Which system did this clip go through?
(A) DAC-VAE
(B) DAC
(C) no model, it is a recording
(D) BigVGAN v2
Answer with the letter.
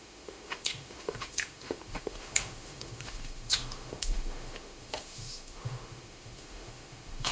A